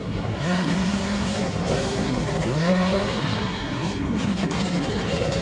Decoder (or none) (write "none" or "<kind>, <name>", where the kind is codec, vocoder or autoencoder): codec, SNAC